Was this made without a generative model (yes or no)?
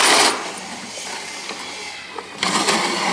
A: no